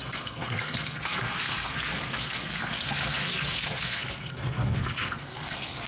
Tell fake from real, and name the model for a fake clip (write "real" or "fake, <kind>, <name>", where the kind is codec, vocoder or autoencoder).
fake, codec, SNAC